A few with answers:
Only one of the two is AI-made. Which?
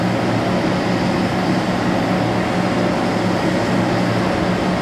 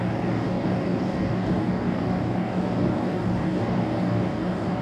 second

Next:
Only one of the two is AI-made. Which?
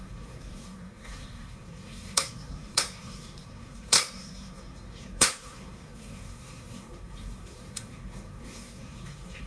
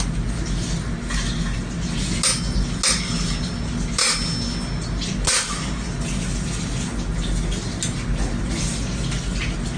first